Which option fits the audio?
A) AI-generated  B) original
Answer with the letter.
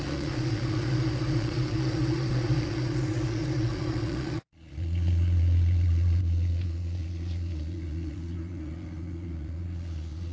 A